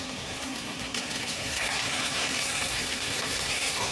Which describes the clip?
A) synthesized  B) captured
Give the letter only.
A